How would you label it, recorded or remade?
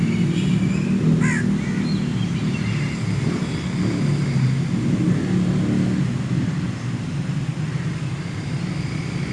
recorded